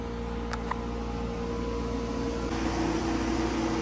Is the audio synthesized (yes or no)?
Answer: no